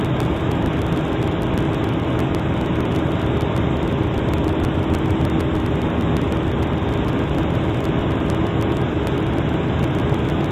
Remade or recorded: recorded